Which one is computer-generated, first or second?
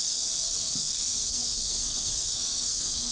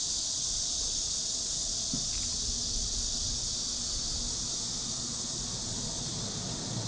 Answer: first